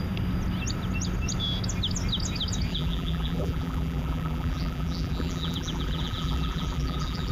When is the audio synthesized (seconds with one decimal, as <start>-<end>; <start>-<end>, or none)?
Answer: 2.7-7.3